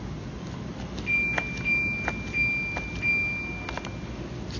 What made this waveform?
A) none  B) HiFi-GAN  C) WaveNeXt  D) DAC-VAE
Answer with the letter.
A